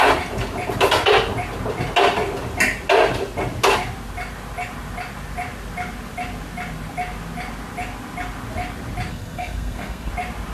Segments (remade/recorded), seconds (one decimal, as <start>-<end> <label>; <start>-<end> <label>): 0.0-9.1 recorded; 9.1-10.1 remade; 10.1-10.5 recorded